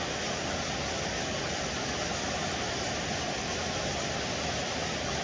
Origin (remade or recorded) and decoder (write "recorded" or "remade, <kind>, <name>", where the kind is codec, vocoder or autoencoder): recorded